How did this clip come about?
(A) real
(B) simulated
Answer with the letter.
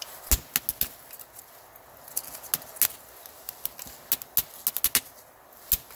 A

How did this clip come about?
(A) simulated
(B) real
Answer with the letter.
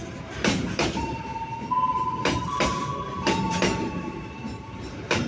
A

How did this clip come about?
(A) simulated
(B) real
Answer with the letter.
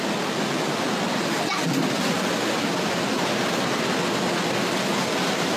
B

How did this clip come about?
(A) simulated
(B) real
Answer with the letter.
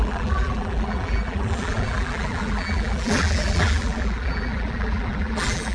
A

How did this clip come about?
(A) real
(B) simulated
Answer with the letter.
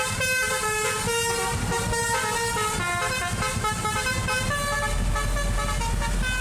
A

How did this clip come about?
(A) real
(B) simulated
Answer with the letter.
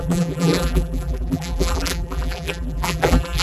B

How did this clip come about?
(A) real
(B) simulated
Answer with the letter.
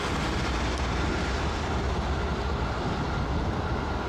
A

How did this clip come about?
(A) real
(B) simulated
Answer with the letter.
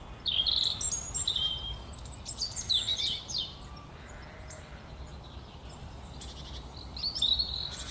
B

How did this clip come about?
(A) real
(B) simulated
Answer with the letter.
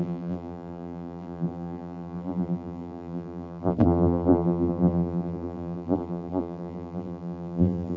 B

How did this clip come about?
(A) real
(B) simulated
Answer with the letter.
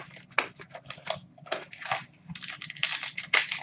A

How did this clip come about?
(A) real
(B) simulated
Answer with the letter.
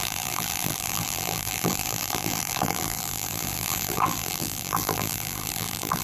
B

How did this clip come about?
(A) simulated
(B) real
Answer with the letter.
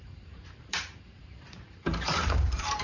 A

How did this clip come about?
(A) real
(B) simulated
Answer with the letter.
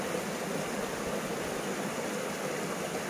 A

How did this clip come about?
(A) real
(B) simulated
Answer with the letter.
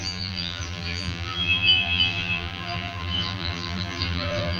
B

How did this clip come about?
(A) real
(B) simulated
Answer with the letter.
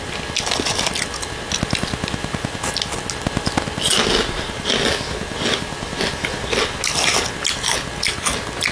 A